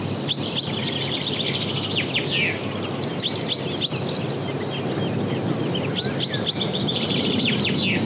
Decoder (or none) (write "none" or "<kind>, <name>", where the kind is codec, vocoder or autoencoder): none